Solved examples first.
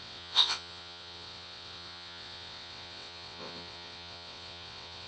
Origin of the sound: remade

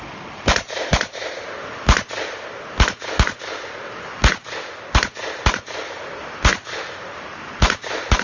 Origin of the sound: recorded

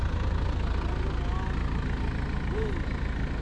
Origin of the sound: recorded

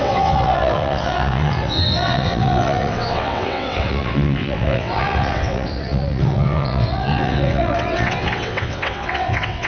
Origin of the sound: remade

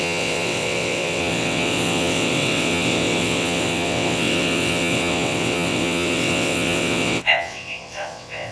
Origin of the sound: remade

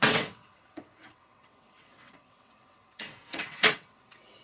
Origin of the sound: remade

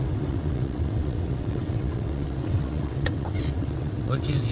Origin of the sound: remade